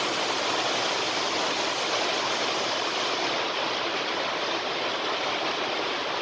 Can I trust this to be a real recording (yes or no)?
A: yes